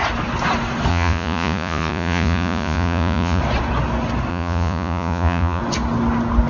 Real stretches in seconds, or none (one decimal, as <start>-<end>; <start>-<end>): 0.0-0.9; 3.4-4.3; 5.6-6.5